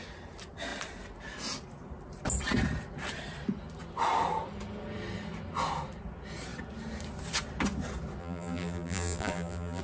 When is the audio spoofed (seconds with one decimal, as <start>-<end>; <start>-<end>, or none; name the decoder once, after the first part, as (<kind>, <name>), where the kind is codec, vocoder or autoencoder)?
8.2-9.8 (vocoder, BigVGAN v2)